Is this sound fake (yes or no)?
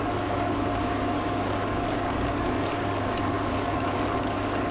yes